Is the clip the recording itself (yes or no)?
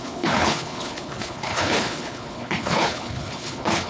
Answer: no